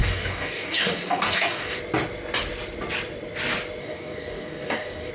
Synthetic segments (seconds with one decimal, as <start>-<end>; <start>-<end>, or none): 0.0-1.8; 3.8-5.1